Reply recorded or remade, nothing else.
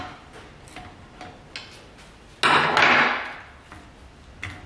recorded